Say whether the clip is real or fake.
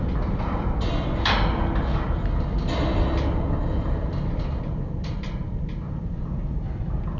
real